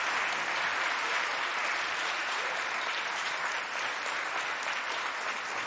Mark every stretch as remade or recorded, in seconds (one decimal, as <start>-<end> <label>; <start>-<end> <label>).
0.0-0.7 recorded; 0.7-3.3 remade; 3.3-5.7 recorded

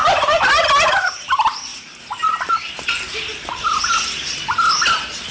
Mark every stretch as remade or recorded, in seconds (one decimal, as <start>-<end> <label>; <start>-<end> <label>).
0.0-0.6 remade; 0.6-5.3 recorded

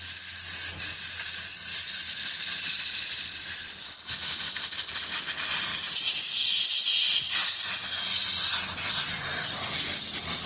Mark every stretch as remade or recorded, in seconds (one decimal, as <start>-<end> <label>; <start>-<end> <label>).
0.0-1.7 recorded; 1.7-5.3 remade; 5.3-10.5 recorded

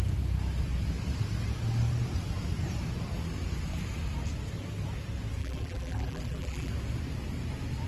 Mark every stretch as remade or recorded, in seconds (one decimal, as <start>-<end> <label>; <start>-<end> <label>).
0.0-5.4 recorded; 5.4-6.7 remade; 6.7-7.9 recorded